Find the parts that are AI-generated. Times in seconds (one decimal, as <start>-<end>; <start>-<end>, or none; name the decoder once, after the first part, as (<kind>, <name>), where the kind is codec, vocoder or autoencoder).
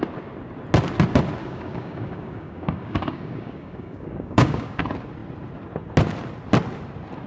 1.4-4.8 (codec, DAC)